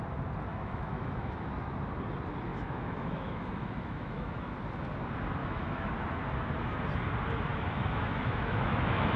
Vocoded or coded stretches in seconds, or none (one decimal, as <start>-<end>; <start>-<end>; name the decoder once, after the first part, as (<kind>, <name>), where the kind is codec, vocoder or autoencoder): 0.5-1.5 (autoencoder, DAC-VAE); 2.5-4.5; 5.4-5.9; 7.5-9.2